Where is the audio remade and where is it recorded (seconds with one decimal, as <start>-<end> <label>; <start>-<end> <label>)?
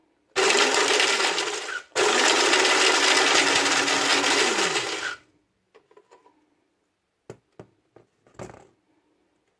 0.0-9.6 recorded